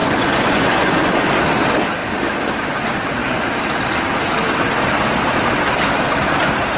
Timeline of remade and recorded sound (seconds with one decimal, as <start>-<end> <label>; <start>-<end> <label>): 0.0-1.1 remade; 1.1-6.8 recorded